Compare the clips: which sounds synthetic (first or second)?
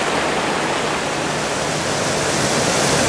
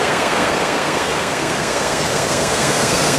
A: second